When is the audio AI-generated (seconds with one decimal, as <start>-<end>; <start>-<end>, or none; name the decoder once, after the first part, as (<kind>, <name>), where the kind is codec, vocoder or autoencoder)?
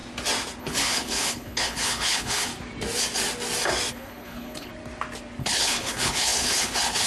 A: 0.6-2.5 (codec, HILCodec); 3.9-4.7; 5.4-7.1